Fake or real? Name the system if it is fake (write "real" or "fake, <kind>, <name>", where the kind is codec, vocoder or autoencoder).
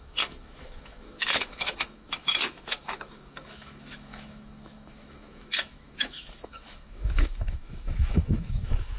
fake, autoencoder, DAC-VAE